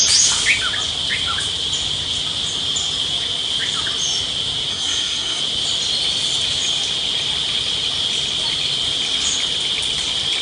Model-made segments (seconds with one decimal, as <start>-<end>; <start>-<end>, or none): 4.7-5.4